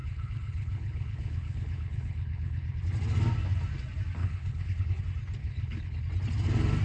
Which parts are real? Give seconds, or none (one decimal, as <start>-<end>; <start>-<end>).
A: 2.8-4.2; 5.0-5.4; 6.0-6.8